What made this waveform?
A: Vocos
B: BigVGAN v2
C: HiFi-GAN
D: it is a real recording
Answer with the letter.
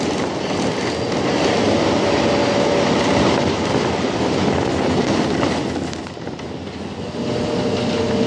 D